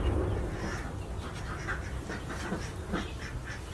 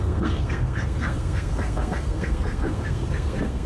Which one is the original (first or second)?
first